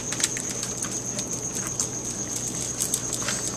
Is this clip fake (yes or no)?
no